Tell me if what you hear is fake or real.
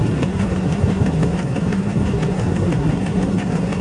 fake